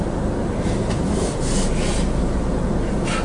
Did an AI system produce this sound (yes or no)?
no